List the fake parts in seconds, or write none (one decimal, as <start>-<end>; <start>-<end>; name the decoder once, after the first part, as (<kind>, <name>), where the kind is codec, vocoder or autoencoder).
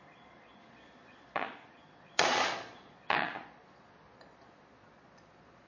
0.0-5.7 (vocoder, Vocos)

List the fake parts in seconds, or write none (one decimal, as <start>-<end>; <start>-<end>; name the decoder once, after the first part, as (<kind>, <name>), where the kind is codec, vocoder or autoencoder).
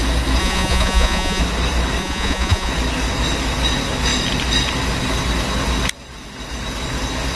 0.4-1.4 (vocoder, Vocos); 2.0-2.7